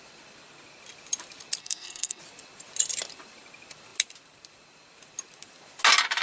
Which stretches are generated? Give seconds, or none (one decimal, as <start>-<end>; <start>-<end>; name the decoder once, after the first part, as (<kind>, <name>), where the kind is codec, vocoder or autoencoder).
1.6-2.2 (codec, SNAC)